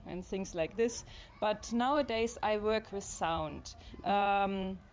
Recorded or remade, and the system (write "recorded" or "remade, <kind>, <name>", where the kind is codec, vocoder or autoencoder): remade, vocoder, Vocos